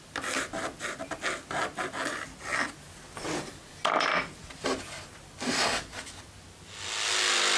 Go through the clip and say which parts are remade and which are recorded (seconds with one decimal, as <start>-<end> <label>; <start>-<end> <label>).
0.0-7.6 recorded